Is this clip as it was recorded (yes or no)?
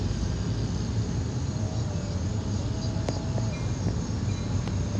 yes